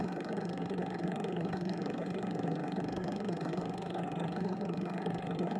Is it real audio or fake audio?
fake